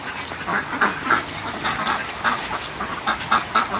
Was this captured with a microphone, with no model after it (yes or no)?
yes